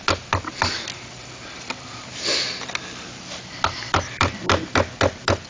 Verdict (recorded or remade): recorded